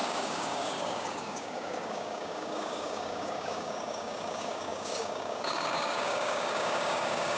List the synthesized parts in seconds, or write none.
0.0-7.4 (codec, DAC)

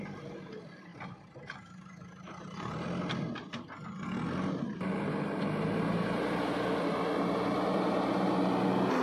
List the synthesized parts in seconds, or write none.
0.9-2.7 (vocoder, BigVGAN v2)